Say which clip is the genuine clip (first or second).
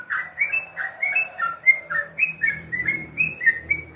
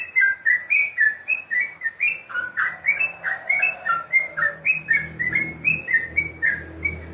second